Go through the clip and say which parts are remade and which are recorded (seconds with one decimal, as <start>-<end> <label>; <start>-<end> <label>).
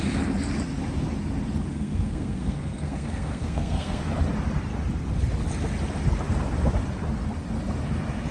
0.0-1.7 recorded; 1.7-4.1 remade; 4.1-8.3 recorded